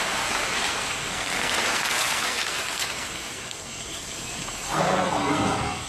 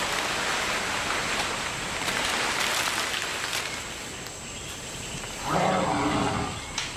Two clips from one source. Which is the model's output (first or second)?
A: first